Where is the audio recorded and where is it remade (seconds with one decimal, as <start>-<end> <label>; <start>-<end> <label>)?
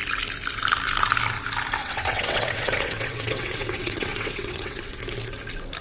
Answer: 0.0-1.8 recorded; 1.8-5.0 remade; 5.0-5.8 recorded